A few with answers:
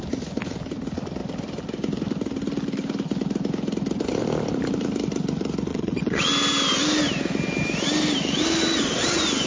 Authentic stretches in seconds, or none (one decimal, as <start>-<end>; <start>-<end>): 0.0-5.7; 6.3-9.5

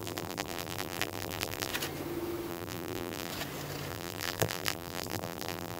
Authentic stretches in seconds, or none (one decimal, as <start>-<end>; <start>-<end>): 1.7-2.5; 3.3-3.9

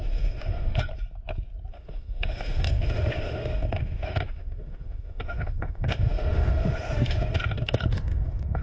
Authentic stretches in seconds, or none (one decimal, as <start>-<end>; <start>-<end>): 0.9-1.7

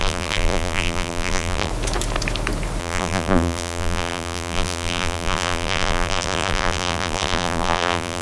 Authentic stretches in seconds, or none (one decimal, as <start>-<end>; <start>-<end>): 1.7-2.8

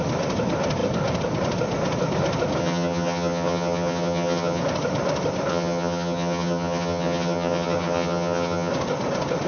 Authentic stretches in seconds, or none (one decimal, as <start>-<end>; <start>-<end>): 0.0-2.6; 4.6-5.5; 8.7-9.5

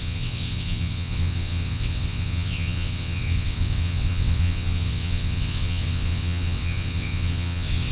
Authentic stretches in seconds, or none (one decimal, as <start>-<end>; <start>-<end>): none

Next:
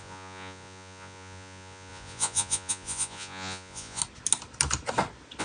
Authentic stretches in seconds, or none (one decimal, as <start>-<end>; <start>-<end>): 4.0-5.4